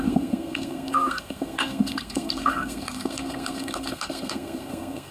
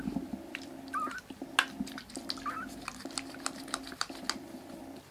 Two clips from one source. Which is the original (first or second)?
second